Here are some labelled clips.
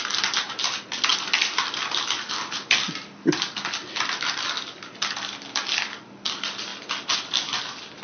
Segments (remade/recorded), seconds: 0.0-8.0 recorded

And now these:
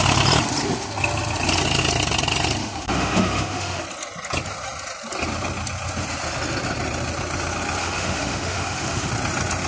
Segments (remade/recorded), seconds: 0.0-2.6 recorded; 2.6-3.8 remade; 3.8-7.8 recorded; 7.8-9.1 remade; 9.1-9.7 recorded